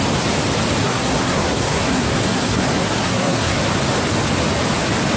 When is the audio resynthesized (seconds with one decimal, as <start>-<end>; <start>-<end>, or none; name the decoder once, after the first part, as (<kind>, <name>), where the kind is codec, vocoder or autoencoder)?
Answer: 0.8-3.6 (codec, SNAC)